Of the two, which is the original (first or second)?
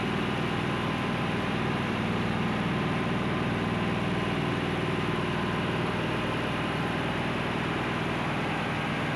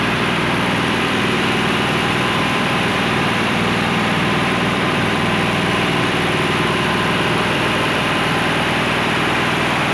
first